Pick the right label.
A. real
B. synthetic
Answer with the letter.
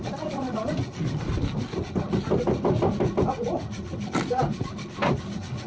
A